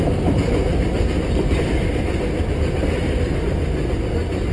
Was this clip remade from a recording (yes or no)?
no